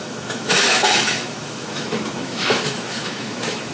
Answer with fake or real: fake